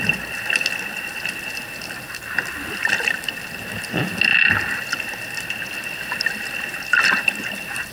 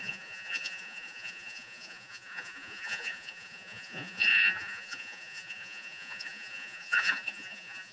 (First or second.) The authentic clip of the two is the first